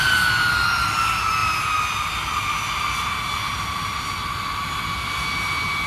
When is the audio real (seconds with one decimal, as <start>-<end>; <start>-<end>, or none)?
0.0-5.9